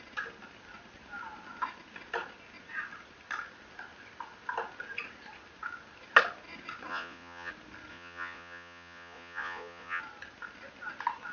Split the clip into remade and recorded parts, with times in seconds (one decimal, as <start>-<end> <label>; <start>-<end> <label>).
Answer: 0.0-6.9 recorded; 6.9-7.5 remade; 7.5-7.9 recorded; 7.9-10.0 remade; 10.0-11.3 recorded